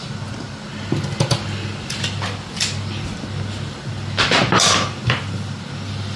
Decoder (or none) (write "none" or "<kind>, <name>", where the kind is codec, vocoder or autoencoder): none